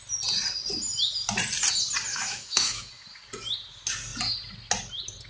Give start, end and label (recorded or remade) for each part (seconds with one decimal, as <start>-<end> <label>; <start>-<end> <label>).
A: 0.0-2.1 recorded; 2.1-2.9 remade; 2.9-5.3 recorded

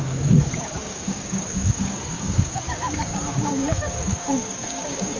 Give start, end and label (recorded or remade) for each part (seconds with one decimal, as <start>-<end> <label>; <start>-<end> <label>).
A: 0.0-5.2 remade

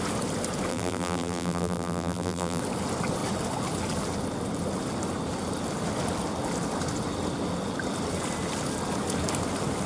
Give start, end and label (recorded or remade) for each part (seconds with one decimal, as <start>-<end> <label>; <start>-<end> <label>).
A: 0.0-0.7 recorded; 0.7-2.6 remade; 2.6-9.9 recorded

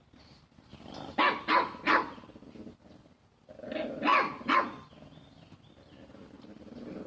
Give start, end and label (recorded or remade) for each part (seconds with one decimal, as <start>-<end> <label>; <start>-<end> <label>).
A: 0.0-0.7 recorded; 0.7-1.2 remade; 1.2-7.1 recorded

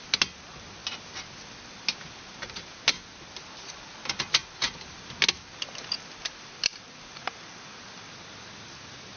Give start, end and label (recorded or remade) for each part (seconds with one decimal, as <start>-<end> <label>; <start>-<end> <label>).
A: 0.0-9.2 recorded

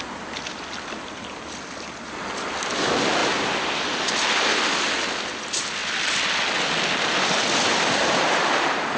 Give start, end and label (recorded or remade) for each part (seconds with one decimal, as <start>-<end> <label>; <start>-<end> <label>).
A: 0.0-9.0 recorded